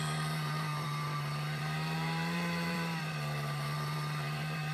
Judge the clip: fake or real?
fake